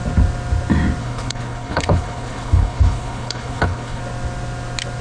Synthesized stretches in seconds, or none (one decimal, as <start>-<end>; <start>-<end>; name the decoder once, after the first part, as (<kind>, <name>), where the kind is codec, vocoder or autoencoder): 1.0-4.0 (codec, HILCodec)